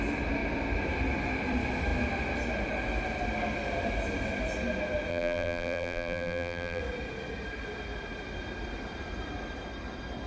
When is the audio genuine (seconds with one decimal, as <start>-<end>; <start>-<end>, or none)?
0.0-5.1; 6.8-10.3